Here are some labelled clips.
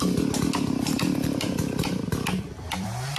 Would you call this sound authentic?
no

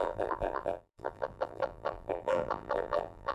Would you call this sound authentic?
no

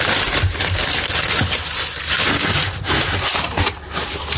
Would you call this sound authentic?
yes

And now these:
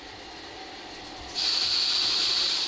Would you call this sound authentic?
no